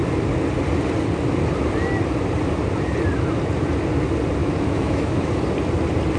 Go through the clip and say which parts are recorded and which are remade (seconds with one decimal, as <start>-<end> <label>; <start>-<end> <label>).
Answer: 0.0-4.4 recorded; 4.4-5.3 remade; 5.3-6.2 recorded